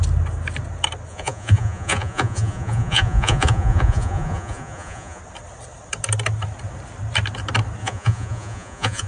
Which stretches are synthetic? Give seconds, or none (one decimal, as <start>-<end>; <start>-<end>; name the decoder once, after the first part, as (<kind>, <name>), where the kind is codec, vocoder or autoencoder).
1.1-5.2 (vocoder, Vocos); 7.8-9.1